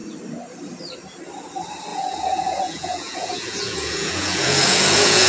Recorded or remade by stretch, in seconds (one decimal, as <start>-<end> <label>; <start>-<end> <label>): 0.0-1.9 recorded; 1.9-5.3 remade